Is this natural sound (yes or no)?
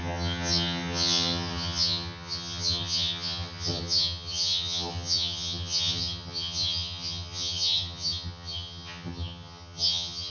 no